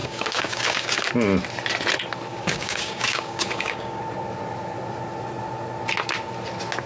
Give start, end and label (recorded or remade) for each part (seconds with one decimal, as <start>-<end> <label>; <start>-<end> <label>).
0.0-1.1 remade; 1.1-2.3 recorded; 2.3-4.0 remade; 4.0-6.9 recorded